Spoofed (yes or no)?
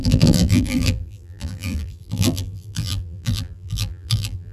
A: yes